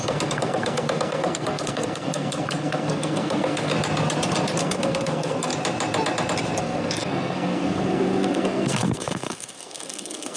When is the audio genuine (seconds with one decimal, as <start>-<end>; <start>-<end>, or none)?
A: 3.7-4.6; 5.5-6.6